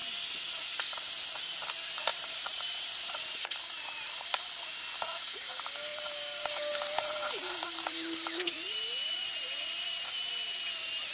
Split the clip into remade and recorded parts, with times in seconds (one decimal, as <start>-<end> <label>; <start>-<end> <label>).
0.0-2.1 recorded; 2.1-3.6 remade; 3.6-5.9 recorded; 5.9-10.3 remade; 10.3-11.1 recorded